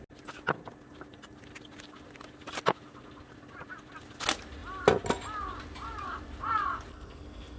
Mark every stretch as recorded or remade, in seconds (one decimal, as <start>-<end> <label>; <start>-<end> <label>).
0.0-6.9 recorded; 6.9-7.6 remade